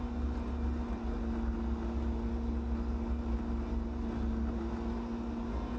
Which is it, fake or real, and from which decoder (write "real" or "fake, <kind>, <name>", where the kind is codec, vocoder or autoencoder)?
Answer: real